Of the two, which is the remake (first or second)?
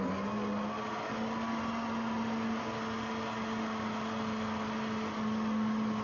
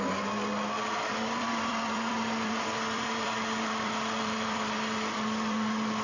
second